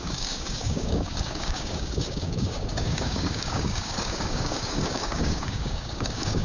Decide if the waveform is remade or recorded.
remade